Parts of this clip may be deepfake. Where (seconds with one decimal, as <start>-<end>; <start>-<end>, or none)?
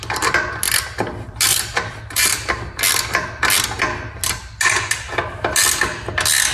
1.5-2.8